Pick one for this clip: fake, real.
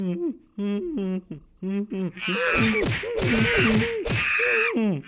real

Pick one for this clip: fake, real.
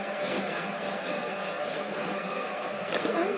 fake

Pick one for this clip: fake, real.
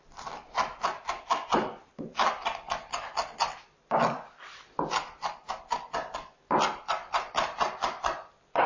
real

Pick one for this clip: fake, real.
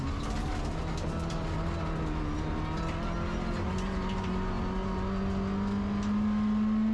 real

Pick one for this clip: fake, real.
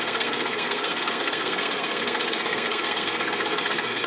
fake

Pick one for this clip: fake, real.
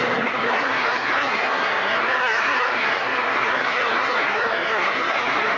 fake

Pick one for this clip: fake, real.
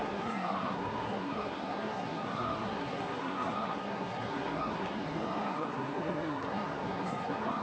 fake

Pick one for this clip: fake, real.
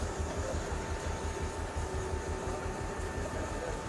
real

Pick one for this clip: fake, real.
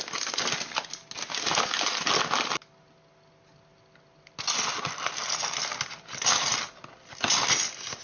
real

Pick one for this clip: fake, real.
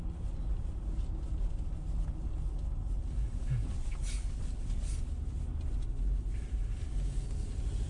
real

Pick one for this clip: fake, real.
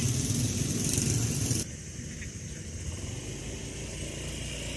real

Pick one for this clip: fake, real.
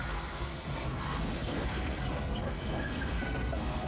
fake